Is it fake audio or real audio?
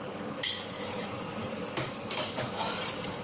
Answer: fake